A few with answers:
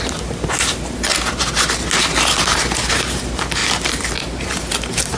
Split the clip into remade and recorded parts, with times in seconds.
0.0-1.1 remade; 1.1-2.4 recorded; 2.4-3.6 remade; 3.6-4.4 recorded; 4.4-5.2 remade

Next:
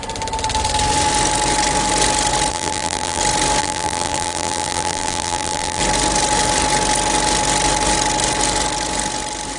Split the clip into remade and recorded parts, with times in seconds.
0.0-2.5 recorded; 2.5-3.2 remade; 3.2-3.6 recorded; 3.6-5.8 remade; 5.8-9.6 recorded

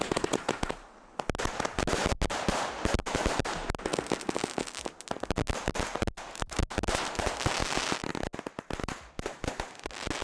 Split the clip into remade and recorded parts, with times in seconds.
0.0-10.2 recorded

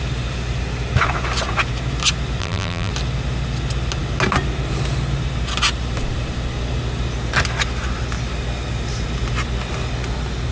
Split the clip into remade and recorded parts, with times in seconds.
0.0-2.4 recorded; 2.4-2.9 remade; 2.9-10.5 recorded

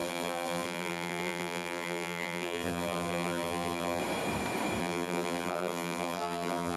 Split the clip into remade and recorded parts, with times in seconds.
0.0-4.0 remade; 4.0-4.8 recorded; 4.8-6.8 remade